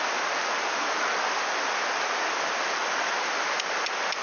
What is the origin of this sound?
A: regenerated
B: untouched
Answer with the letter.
B